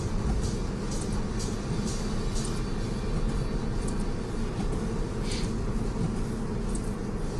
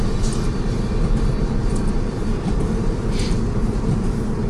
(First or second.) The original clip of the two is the first